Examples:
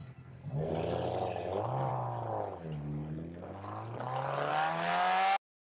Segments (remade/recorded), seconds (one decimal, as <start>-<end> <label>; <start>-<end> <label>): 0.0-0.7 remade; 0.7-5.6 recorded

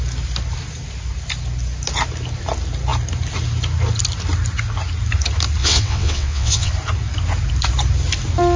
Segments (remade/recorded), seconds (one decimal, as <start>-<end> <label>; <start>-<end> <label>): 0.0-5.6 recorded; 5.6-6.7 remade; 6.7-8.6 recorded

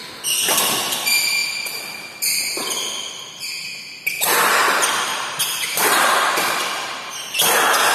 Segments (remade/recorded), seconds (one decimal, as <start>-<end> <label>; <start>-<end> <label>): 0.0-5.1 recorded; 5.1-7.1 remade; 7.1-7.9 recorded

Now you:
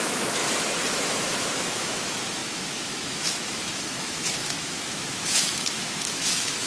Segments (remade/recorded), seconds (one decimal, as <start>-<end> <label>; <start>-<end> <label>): 0.0-0.4 remade; 0.4-0.9 recorded; 0.9-6.7 remade

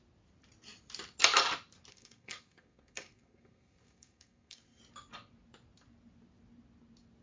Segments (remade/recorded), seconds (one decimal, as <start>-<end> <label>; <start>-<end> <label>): 0.0-1.9 recorded; 1.9-4.8 remade; 4.8-7.2 recorded

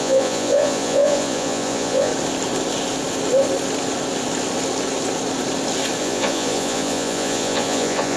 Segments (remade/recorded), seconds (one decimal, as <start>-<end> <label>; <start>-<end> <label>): 0.0-2.1 remade; 2.1-6.0 recorded; 6.0-8.2 remade

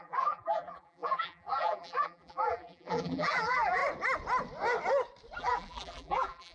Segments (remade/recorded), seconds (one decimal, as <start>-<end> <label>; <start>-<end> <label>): 0.0-3.8 remade; 3.8-5.4 recorded; 5.4-6.5 remade